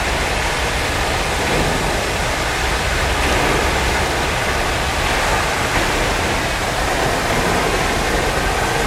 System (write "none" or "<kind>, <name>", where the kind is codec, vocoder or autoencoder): none